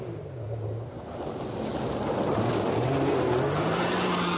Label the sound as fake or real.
real